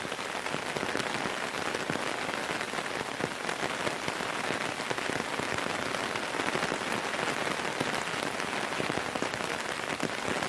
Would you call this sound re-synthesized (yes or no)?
no